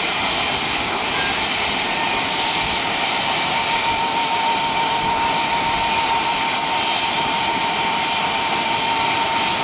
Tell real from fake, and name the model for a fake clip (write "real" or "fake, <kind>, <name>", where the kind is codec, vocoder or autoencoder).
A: real